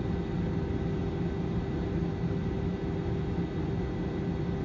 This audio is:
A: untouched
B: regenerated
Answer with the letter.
A